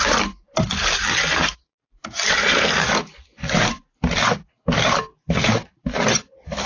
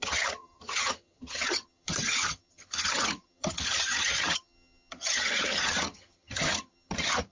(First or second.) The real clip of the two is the first